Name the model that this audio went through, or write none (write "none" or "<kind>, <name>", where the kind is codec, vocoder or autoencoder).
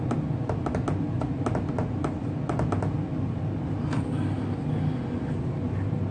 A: none